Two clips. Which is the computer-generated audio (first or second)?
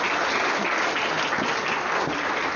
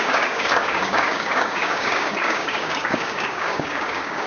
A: second